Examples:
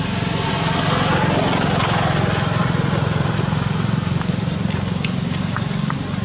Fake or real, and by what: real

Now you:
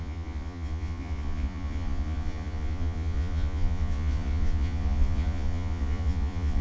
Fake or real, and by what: fake, vocoder, Vocos